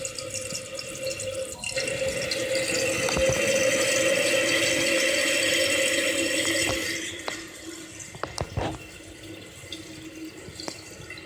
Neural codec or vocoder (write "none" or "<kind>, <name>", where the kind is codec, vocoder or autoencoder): none